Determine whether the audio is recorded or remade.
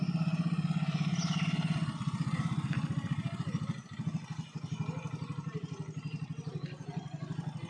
recorded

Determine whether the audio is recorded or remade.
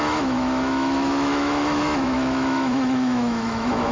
remade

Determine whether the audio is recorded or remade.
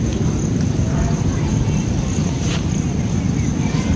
recorded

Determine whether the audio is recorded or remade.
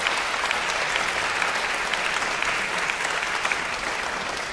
recorded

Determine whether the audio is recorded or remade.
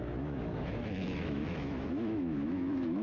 remade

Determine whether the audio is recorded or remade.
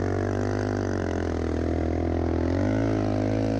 recorded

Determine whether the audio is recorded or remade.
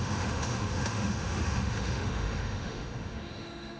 remade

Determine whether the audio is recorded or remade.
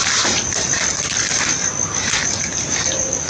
recorded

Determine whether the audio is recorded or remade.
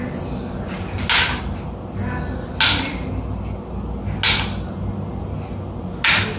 recorded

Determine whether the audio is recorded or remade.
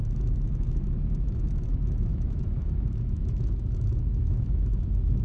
remade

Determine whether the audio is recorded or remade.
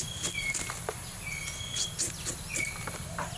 recorded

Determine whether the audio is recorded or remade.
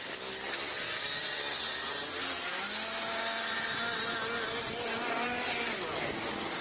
recorded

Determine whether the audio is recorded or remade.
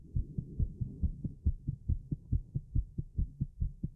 remade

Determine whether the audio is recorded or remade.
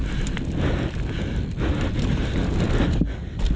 recorded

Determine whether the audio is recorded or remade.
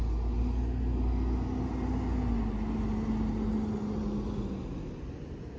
recorded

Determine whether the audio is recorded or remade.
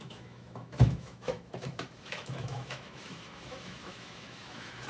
remade